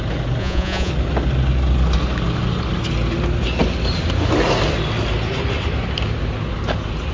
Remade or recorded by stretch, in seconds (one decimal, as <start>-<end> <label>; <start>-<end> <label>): 0.0-0.4 recorded; 0.4-0.9 remade; 0.9-7.1 recorded